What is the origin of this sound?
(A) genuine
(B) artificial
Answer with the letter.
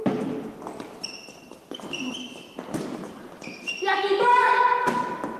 A